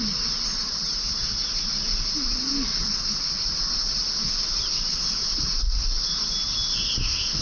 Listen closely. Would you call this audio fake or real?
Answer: real